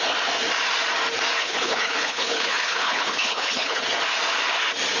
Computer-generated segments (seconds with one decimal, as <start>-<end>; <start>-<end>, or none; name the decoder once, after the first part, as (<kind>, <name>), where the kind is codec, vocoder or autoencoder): 1.4-3.8 (codec, HILCodec)

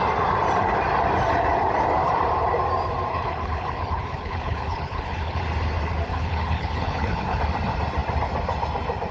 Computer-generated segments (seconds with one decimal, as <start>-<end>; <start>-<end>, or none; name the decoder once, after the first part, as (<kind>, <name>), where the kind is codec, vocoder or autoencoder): 3.1-5.4 (codec, HILCodec); 6.1-7.4

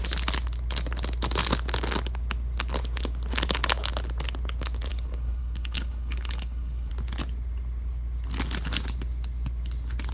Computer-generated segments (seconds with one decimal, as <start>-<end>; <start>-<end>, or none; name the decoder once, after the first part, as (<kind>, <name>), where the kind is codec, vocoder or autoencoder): 4.9-6.9 (codec, HILCodec)

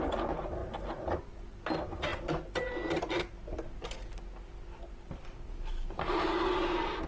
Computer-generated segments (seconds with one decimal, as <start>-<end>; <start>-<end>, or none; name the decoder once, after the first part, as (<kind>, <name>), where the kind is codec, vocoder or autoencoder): none

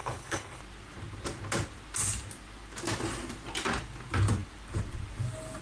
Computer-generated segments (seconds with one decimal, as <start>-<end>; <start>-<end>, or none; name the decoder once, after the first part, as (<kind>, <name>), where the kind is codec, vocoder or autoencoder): 0.0-0.6 (codec, HILCodec)